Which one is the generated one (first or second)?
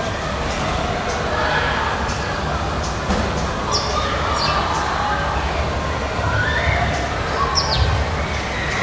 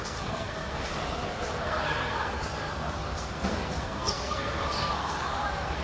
second